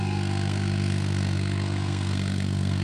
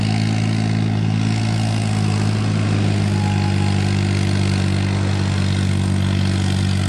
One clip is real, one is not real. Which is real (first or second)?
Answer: second